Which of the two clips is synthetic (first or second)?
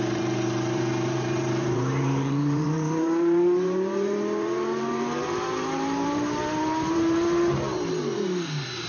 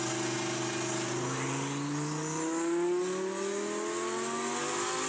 first